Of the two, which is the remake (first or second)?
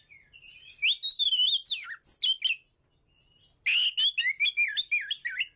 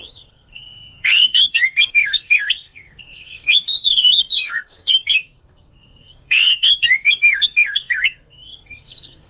second